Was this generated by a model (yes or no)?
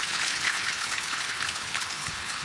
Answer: yes